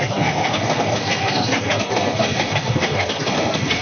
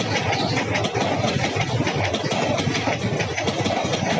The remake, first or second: first